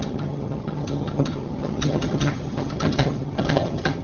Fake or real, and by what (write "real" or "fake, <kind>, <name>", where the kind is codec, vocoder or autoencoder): fake, vocoder, HiFi-GAN